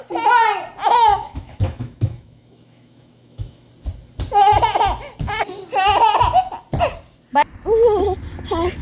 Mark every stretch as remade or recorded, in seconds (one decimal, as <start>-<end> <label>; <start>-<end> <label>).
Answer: 0.0-0.8 recorded; 0.8-3.7 remade; 3.7-8.8 recorded